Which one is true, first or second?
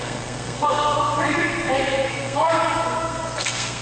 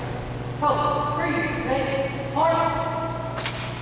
second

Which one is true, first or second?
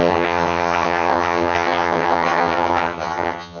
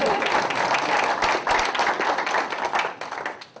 second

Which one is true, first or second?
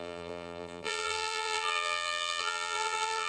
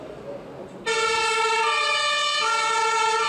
second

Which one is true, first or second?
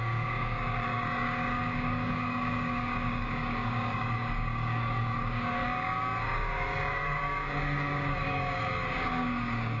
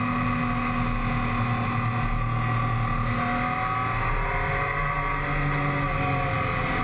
second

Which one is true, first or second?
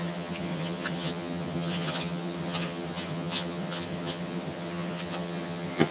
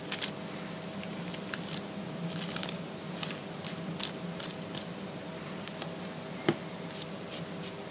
second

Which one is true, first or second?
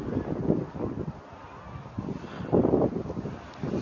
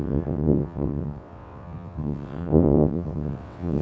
first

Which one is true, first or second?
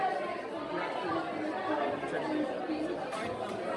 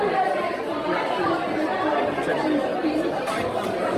first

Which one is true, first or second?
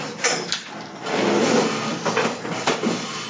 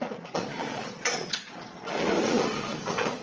first